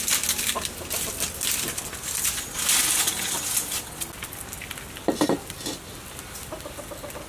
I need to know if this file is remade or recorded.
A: recorded